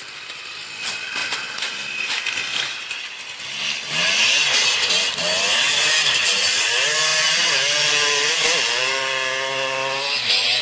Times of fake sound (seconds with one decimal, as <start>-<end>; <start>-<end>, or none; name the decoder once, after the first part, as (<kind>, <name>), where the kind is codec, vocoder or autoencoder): none